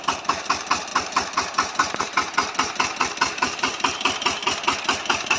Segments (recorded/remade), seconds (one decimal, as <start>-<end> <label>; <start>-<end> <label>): 0.0-5.4 remade

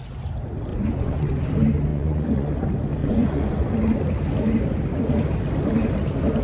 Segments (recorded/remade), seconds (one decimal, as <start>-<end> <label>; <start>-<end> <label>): 0.0-0.7 recorded; 0.7-1.5 remade; 1.5-1.9 recorded; 1.9-2.5 remade; 2.5-3.0 recorded; 3.0-3.7 remade; 3.7-6.4 recorded